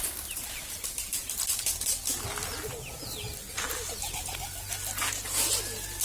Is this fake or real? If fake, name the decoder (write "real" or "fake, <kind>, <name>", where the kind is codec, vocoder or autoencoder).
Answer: real